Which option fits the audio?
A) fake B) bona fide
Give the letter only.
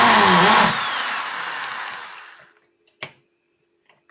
B